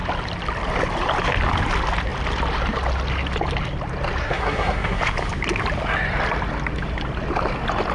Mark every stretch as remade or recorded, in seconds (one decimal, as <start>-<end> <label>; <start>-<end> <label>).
0.0-4.2 recorded; 4.2-5.0 remade; 5.0-7.9 recorded